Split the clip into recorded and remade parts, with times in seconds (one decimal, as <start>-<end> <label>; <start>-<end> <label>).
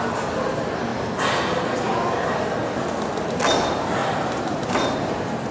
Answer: 0.0-0.9 remade; 0.9-3.3 recorded; 3.3-5.5 remade